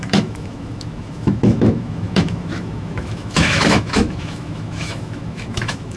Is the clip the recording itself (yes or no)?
no